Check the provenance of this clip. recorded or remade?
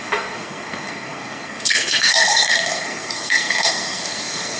remade